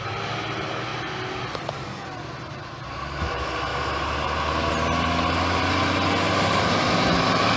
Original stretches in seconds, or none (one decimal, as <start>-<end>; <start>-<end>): 0.0-7.6